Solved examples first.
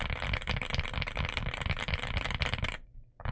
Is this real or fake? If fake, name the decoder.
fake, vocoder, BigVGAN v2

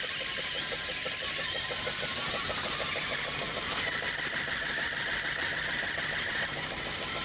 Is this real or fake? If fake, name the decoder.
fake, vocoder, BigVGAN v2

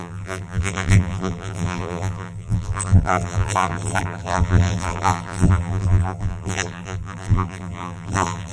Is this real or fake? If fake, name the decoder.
fake, vocoder, BigVGAN v2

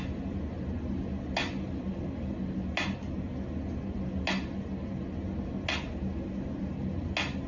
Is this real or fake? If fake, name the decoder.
real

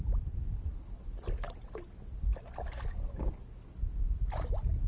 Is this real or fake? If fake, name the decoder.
real